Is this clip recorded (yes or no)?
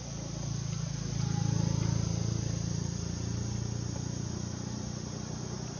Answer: yes